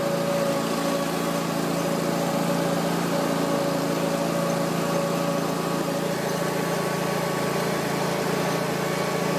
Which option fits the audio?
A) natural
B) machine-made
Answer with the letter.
A